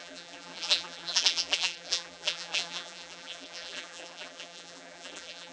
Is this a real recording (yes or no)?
no